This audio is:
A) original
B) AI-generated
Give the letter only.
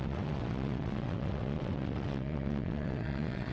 B